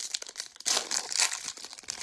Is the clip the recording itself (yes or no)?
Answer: yes